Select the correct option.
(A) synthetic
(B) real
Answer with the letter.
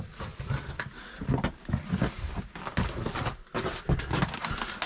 B